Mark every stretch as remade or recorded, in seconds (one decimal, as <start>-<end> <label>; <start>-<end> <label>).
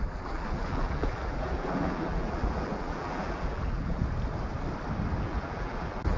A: 0.0-4.0 remade; 4.0-5.2 recorded; 5.2-6.2 remade